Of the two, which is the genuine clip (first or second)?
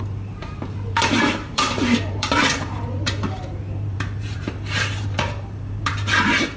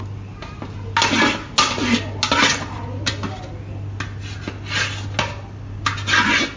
second